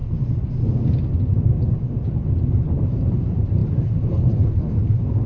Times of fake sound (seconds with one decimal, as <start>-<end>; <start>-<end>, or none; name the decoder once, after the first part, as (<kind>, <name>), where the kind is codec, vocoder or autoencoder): 2.8-5.3 (vocoder, BigVGAN v2)